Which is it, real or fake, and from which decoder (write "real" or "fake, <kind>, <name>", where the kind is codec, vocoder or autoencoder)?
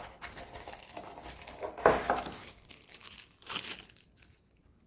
real